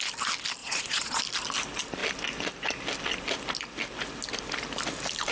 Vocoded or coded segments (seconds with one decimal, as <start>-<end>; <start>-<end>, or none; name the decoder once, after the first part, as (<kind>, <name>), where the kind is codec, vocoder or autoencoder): 0.6-1.2 (vocoder, Vocos)